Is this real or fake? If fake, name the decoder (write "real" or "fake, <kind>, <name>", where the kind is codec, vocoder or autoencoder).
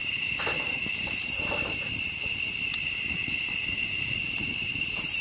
fake, vocoder, BigVGAN v2